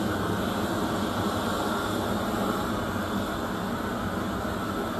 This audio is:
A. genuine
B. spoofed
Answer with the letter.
A